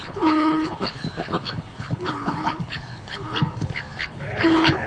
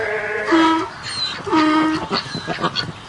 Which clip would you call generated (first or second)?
first